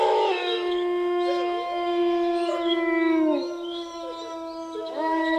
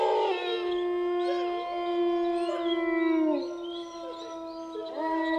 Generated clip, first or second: first